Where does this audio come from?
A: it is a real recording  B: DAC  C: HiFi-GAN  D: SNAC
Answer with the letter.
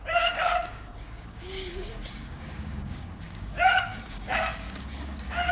B